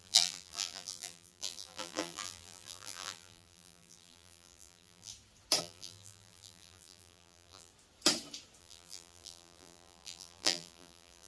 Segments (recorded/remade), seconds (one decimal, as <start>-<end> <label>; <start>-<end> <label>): 0.0-5.1 remade; 5.1-5.6 recorded; 5.6-7.7 remade; 7.7-8.6 recorded; 8.6-11.3 remade